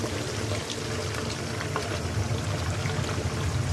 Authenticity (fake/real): real